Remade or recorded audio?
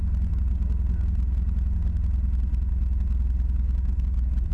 recorded